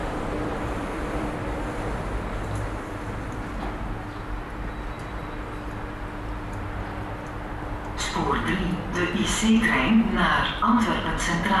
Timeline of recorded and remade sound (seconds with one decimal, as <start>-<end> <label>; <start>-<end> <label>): 0.0-1.3 remade; 1.3-11.6 recorded